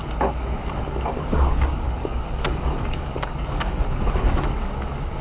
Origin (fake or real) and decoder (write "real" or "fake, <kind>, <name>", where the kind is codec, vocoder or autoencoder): fake, codec, DAC